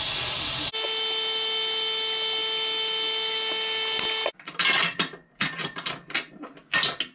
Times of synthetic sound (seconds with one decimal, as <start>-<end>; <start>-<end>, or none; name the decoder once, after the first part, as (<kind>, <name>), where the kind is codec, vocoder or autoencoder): none